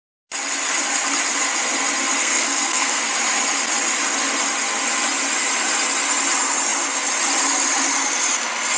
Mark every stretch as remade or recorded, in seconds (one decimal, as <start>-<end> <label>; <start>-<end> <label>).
0.0-2.2 recorded; 2.2-3.0 remade; 3.0-8.8 recorded